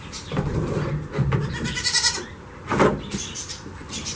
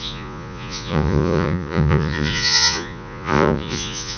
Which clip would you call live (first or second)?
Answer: first